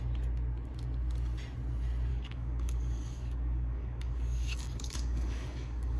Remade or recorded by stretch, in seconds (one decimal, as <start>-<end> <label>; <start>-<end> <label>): 0.0-2.1 recorded; 2.1-6.0 remade